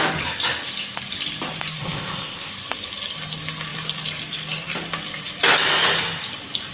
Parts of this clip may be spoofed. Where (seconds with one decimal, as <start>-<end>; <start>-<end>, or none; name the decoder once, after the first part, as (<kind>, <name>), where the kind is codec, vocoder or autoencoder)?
1.8-2.5 (codec, ZipCodec)